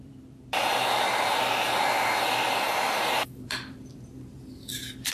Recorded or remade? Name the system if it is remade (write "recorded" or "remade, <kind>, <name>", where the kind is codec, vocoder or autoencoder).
remade, vocoder, BigVGAN v2